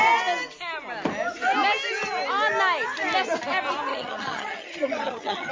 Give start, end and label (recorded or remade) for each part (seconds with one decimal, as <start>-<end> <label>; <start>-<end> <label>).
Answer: 0.0-3.9 recorded; 3.9-5.5 remade